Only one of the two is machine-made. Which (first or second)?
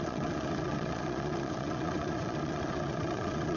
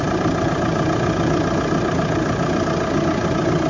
first